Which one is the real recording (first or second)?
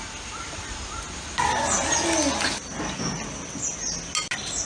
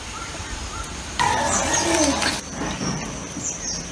first